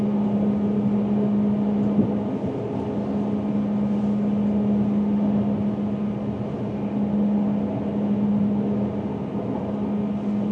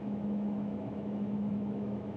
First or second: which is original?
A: first